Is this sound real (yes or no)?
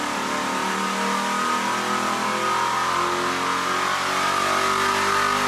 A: yes